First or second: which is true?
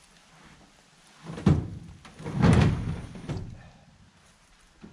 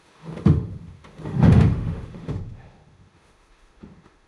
first